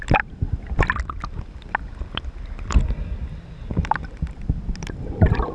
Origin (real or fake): real